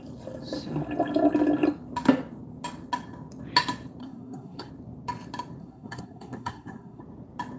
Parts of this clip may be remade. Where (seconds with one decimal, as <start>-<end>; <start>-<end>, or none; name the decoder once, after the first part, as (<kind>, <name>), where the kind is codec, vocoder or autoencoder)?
4.0-4.7 (codec, SNAC); 5.6-7.0